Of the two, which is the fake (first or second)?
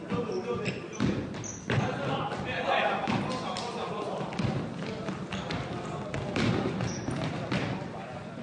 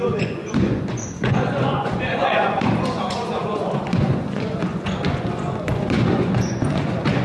second